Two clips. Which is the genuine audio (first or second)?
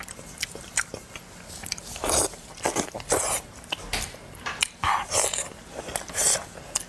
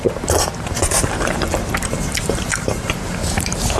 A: first